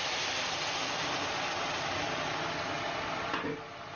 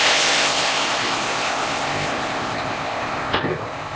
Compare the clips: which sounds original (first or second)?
first